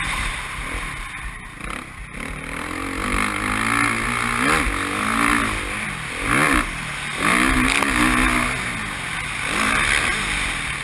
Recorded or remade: recorded